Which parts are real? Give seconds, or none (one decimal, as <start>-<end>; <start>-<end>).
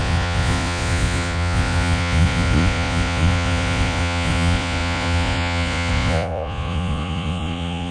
none